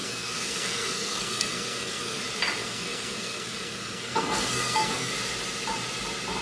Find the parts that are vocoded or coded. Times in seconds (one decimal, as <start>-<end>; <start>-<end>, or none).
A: 0.0-2.2; 2.6-5.1